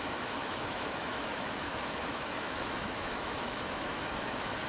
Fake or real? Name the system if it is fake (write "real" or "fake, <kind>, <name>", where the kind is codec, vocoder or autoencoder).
fake, autoencoder, DAC-VAE